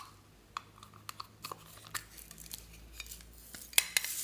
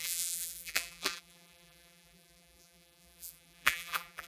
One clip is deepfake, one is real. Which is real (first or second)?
first